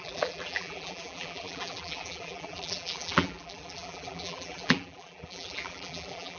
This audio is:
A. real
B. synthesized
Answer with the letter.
B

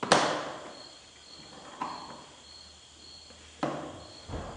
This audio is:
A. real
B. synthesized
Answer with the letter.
A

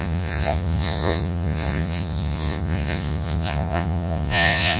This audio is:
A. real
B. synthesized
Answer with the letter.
B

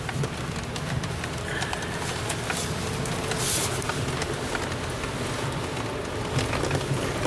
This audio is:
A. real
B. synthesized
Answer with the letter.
A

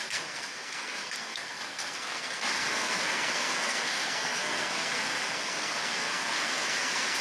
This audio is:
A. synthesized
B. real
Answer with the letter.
A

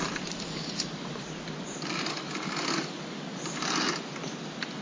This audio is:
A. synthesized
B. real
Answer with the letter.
B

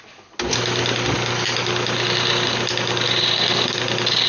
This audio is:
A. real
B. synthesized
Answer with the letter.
A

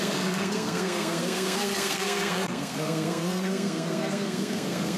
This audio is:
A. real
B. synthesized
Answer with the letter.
B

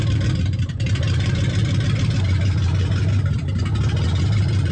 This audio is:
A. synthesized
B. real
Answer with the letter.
A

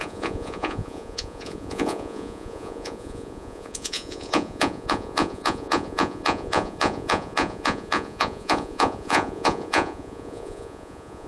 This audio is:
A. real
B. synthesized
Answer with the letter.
B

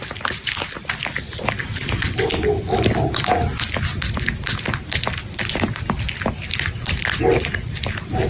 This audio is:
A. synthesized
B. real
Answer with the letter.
B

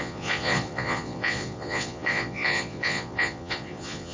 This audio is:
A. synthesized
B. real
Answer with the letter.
A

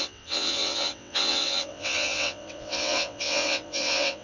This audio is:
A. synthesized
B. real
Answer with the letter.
A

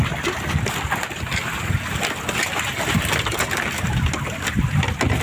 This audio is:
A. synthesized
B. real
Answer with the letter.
B